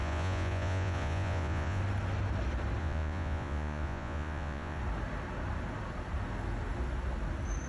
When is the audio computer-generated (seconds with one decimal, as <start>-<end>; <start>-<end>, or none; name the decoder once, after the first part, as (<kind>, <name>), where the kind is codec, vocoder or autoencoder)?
0.0-1.8 (vocoder, Vocos); 2.8-4.8